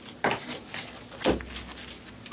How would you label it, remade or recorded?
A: recorded